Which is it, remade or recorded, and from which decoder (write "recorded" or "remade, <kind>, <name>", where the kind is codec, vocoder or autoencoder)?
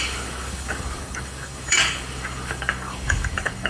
remade, codec, DAC